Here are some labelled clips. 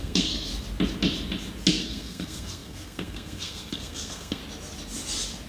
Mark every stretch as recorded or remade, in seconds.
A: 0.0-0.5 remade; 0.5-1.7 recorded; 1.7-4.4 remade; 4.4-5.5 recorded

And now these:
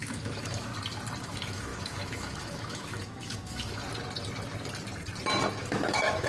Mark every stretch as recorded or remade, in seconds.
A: 0.0-0.7 remade; 0.7-1.2 recorded; 1.2-3.8 remade; 3.8-5.6 recorded; 5.6-6.3 remade

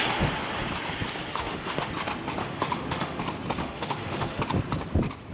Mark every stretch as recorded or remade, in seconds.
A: 0.0-1.3 recorded; 1.3-1.9 remade; 1.9-2.4 recorded; 2.4-3.2 remade; 3.2-3.6 recorded; 3.6-4.4 remade; 4.4-5.3 recorded

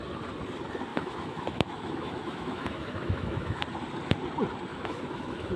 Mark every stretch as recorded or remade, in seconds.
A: 0.0-0.9 recorded; 0.9-3.6 remade; 3.6-4.7 recorded; 4.7-5.6 remade

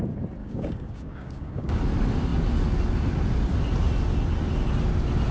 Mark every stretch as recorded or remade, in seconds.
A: 0.0-0.4 recorded; 0.4-1.8 remade; 1.8-5.3 recorded

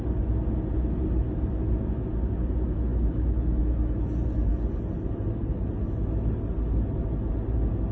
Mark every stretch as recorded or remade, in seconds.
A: 0.0-2.9 recorded; 2.9-3.6 remade; 3.6-7.9 recorded

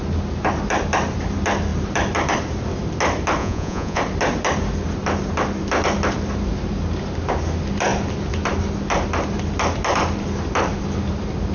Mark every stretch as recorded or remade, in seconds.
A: 0.0-3.4 recorded; 3.4-4.0 remade; 4.0-11.5 recorded